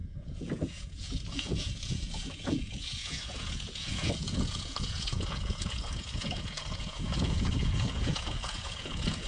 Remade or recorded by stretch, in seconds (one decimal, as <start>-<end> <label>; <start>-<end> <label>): 0.0-9.3 remade